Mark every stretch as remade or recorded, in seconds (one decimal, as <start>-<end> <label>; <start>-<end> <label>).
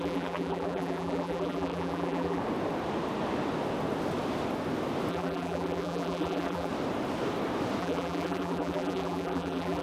0.0-2.4 remade; 2.4-5.1 recorded; 5.1-6.7 remade; 6.7-7.8 recorded; 7.8-9.8 remade